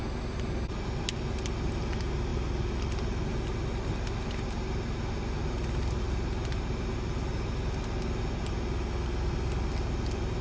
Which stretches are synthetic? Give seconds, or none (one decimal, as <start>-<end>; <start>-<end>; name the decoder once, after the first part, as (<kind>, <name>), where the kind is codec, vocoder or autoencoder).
none